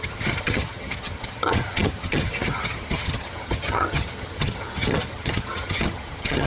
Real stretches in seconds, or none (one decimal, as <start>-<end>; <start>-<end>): none